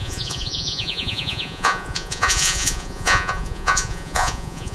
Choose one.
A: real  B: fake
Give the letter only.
B